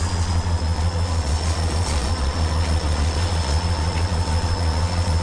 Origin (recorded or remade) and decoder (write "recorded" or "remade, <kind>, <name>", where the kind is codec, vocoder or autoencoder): remade, vocoder, Vocos